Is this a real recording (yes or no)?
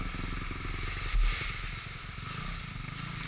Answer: yes